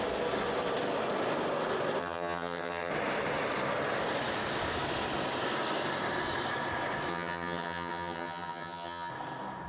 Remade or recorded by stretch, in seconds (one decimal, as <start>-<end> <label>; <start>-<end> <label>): 0.0-2.0 recorded; 2.0-2.9 remade; 2.9-7.1 recorded; 7.1-9.1 remade; 9.1-9.7 recorded